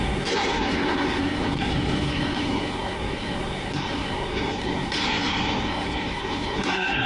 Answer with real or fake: fake